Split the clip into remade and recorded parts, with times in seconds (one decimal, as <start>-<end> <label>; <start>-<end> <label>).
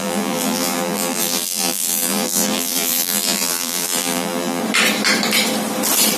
0.0-4.6 remade; 4.6-6.2 recorded